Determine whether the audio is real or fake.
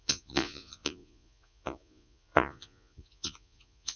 fake